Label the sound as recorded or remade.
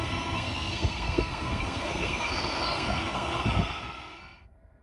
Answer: remade